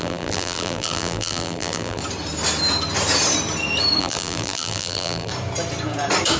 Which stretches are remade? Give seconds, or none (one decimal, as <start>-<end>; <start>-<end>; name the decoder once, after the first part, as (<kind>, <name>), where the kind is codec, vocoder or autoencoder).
0.0-2.0 (vocoder, BigVGAN v2); 4.0-5.3